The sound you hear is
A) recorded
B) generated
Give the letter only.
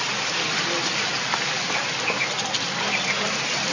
B